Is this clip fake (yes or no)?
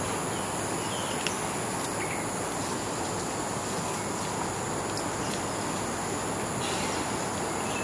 no